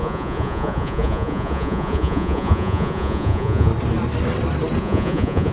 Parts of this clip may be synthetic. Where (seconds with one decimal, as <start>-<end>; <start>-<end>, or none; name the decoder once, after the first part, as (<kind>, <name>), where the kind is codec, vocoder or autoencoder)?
0.0-3.7 (vocoder, Vocos); 4.8-5.5